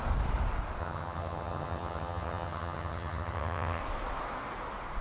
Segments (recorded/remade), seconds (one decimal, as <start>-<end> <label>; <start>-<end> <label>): 0.0-0.8 recorded; 0.8-3.8 remade; 3.8-5.0 recorded